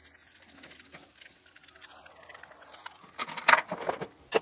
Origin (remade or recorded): remade